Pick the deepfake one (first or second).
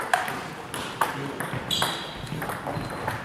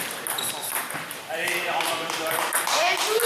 second